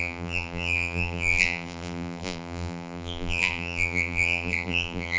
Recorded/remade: remade